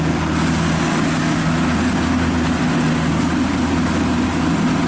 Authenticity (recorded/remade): recorded